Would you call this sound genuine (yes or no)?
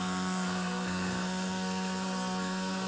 no